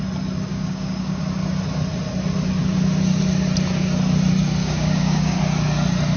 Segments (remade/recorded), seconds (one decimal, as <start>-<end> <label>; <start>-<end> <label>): 0.0-0.5 recorded; 0.5-1.2 remade; 1.2-4.6 recorded; 4.6-5.4 remade; 5.4-6.2 recorded